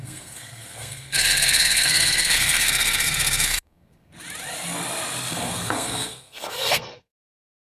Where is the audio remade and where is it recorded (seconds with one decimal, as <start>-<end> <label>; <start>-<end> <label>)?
0.0-4.1 remade; 4.1-5.3 recorded; 5.3-7.8 remade